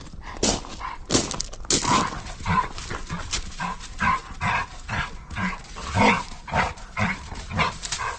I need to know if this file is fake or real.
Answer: real